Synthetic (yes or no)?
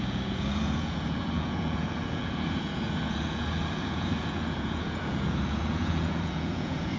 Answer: yes